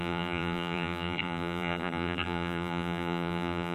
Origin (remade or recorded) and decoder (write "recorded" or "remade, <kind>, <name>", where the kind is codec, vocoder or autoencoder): remade, vocoder, BigVGAN v2